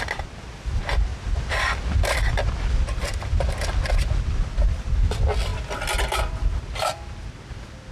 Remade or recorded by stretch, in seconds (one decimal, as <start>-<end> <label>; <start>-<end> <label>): 0.0-7.9 recorded